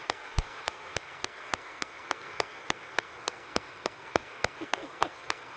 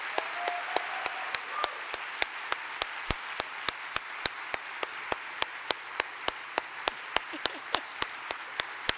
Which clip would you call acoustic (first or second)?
second